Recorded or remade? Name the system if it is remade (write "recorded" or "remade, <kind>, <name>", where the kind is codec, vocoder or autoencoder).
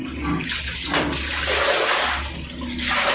recorded